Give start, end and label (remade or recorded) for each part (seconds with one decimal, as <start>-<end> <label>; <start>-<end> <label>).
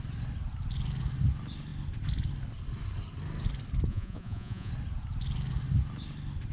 0.0-3.9 recorded; 3.9-4.7 remade; 4.7-6.5 recorded